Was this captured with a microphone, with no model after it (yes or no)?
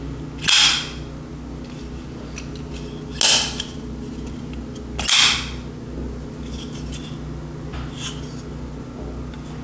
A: yes